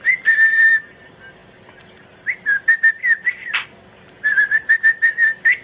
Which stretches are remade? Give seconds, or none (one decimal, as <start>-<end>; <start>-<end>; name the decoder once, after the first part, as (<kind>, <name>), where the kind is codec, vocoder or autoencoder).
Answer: none